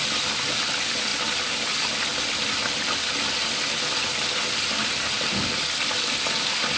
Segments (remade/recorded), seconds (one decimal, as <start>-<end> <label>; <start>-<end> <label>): 0.0-6.8 recorded